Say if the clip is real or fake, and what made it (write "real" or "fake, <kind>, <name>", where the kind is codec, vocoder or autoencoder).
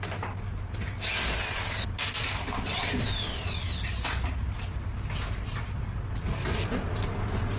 real